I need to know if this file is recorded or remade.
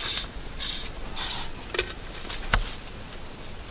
recorded